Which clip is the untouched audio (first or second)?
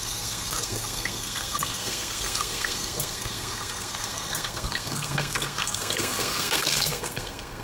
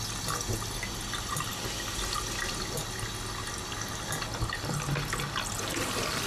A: second